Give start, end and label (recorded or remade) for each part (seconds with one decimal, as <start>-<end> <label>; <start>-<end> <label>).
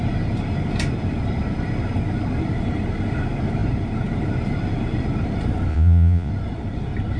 0.0-5.7 recorded; 5.7-6.3 remade; 6.3-7.2 recorded